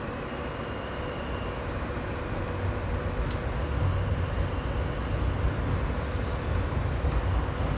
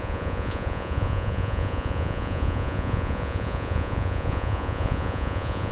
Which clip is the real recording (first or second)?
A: first